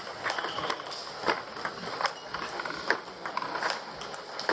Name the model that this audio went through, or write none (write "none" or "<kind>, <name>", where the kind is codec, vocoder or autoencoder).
none